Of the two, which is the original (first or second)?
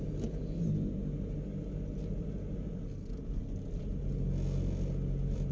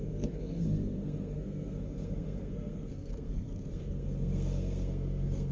first